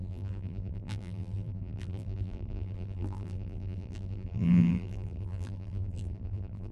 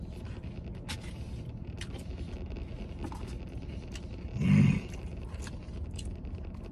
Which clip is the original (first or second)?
second